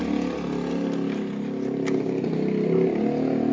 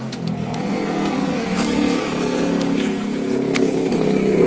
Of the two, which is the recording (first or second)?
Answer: first